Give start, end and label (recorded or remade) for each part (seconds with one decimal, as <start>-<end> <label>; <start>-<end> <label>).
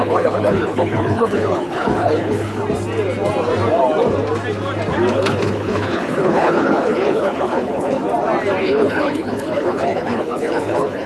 0.0-2.6 remade; 2.6-5.1 recorded; 5.1-8.0 remade; 8.0-8.6 recorded; 8.6-11.1 remade